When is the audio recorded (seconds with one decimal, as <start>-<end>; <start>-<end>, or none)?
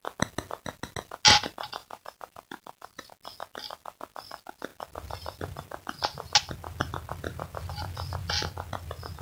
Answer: 0.0-1.8; 3.1-9.2